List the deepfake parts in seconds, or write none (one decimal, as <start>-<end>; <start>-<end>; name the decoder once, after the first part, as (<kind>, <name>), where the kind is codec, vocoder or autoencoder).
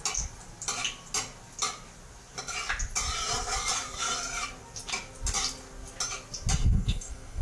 6.6-7.4 (codec, SNAC)